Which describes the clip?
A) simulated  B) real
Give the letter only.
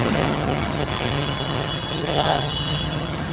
A